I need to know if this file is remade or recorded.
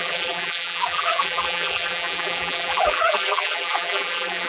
remade